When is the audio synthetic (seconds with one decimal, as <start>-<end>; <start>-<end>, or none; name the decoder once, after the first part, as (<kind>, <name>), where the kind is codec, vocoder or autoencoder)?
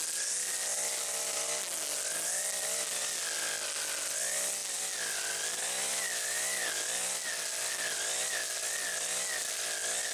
none